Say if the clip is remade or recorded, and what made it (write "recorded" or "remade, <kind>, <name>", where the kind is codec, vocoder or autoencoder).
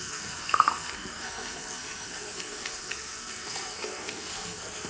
remade, codec, SNAC